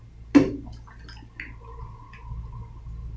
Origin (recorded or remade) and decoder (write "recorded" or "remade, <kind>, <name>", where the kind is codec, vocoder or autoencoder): recorded